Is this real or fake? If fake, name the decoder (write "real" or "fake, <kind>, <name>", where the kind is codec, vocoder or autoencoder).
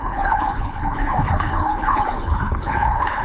fake, codec, HILCodec